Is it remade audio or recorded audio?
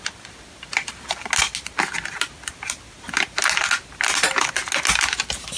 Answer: recorded